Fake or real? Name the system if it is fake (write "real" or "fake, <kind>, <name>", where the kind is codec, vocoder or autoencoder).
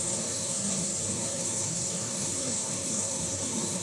fake, codec, SNAC